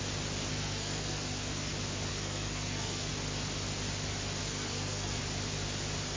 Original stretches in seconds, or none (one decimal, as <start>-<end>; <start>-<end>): 0.0-0.5; 1.7-2.1; 3.1-4.4; 5.2-6.2